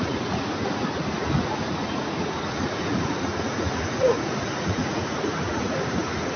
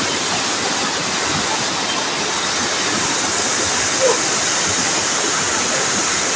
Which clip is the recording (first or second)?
second